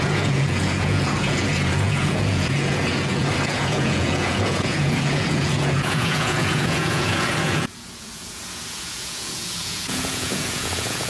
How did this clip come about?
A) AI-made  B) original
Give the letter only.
A